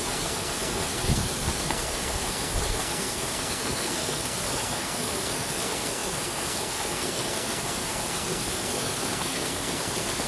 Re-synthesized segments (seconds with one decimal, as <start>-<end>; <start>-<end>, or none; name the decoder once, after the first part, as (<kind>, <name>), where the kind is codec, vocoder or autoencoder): 0.0-10.3 (codec, SNAC)